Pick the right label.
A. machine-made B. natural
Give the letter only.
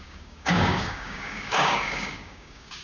A